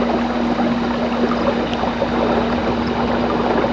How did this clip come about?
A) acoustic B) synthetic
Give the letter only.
A